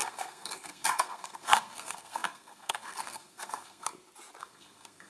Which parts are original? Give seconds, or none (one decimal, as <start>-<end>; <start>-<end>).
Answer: 3.9-4.4